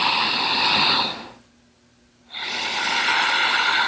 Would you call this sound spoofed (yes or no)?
no